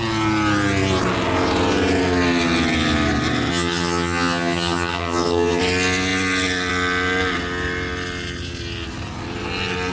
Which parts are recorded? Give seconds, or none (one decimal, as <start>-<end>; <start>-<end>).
0.0-3.5; 5.6-9.9